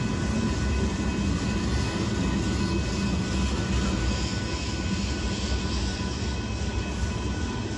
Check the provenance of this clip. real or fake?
real